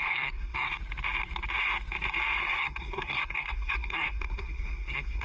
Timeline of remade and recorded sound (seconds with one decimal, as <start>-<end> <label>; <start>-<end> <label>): 0.0-0.8 remade; 0.8-2.4 recorded; 2.4-5.2 remade